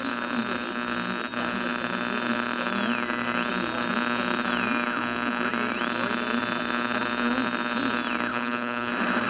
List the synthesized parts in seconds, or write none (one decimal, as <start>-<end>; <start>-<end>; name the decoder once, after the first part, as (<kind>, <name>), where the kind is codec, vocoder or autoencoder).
8.3-8.9 (codec, HILCodec)